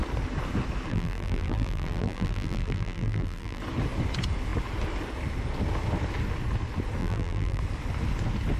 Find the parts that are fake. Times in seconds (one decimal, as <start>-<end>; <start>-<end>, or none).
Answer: 0.9-3.6; 7.0-7.6